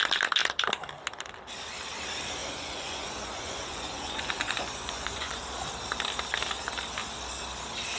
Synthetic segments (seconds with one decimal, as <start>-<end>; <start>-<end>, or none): 2.4-5.4